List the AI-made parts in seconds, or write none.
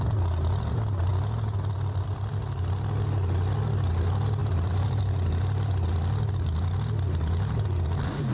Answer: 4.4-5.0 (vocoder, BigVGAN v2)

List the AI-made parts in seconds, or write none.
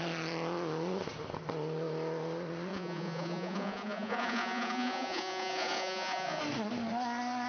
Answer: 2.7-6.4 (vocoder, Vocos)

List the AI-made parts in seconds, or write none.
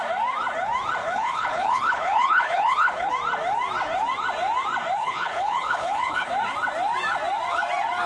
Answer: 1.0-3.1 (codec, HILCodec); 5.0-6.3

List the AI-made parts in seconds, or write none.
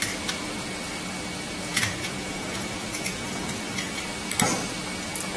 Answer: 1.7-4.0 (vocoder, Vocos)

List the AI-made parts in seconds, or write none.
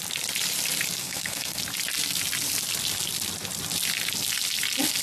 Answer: 1.0-1.6 (codec, SNAC)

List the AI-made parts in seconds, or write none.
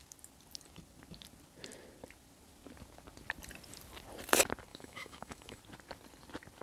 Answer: 4.7-5.6 (autoencoder, DAC-VAE)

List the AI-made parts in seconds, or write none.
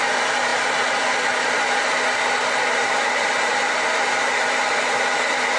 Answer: 0.0-0.5 (vocoder, BigVGAN v2); 2.6-3.5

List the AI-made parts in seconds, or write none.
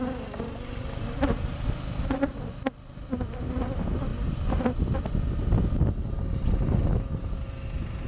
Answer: none